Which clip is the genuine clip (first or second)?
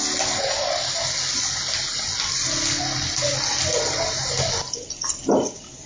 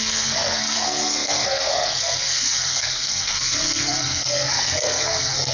first